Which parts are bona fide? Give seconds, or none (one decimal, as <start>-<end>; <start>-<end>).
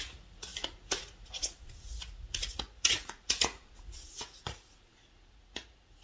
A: none